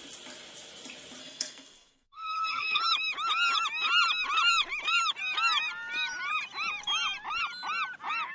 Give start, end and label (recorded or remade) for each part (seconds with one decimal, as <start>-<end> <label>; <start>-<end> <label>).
0.0-1.2 recorded; 1.2-2.8 remade; 2.8-8.3 recorded